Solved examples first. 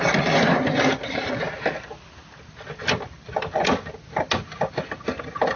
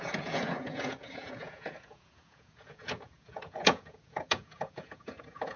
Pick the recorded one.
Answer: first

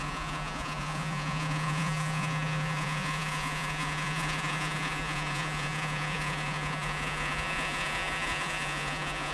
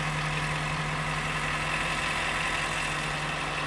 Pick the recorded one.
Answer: second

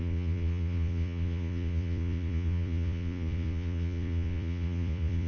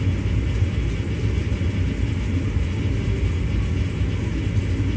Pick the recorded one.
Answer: second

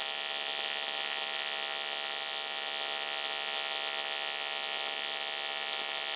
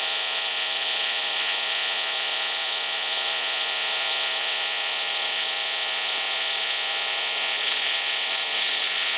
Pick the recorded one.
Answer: first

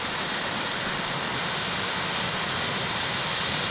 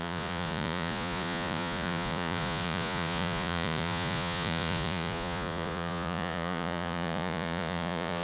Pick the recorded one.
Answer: first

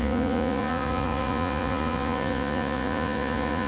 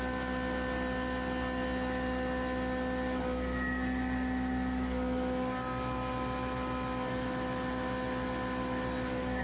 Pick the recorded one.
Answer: second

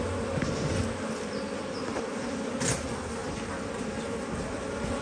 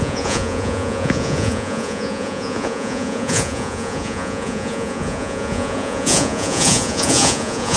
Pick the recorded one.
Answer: first